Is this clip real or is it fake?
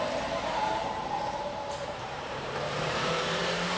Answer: fake